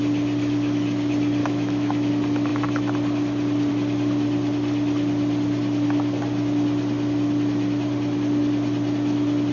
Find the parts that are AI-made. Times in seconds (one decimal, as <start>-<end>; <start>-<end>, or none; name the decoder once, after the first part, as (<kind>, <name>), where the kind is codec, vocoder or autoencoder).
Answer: 1.4-2.1 (autoencoder, DAC-VAE)